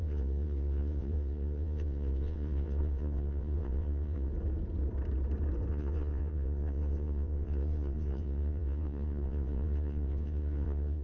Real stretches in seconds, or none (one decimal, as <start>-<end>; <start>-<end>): 4.3-5.7